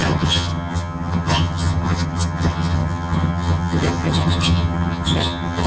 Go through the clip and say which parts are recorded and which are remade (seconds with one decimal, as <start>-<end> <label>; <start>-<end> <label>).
0.0-5.7 remade

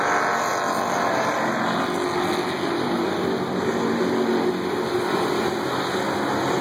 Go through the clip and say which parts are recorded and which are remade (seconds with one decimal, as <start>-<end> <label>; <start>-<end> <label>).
0.0-6.6 recorded

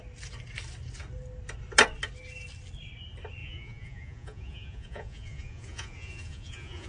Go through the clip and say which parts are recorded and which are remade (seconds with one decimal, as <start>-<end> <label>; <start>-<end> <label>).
0.0-3.4 recorded; 3.4-6.9 remade

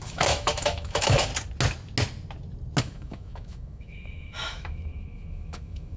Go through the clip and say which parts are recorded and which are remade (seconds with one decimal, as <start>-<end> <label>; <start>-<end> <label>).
0.0-1.3 remade; 1.3-2.8 recorded; 2.8-6.0 remade

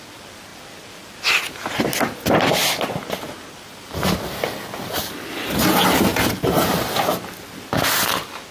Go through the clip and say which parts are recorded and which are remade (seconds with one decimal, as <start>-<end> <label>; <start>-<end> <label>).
0.0-3.0 recorded; 3.0-5.2 remade; 5.2-6.1 recorded; 6.1-6.9 remade; 6.9-8.5 recorded